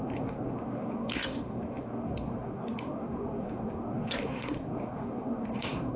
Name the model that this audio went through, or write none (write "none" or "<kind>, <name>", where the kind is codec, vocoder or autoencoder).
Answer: codec, SNAC